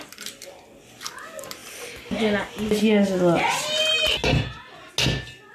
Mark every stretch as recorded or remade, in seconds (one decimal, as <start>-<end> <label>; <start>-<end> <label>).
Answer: 0.0-5.5 recorded